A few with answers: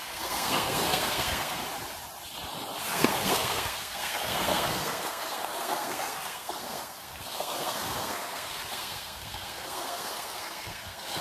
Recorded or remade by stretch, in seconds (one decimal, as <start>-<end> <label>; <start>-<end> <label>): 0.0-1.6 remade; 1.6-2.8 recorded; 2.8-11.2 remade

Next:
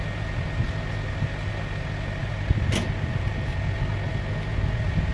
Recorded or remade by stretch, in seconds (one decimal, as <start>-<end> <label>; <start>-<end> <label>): 0.0-5.1 recorded

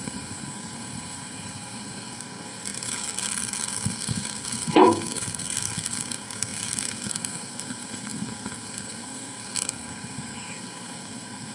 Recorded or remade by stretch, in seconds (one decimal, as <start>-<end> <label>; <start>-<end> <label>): 0.0-11.5 remade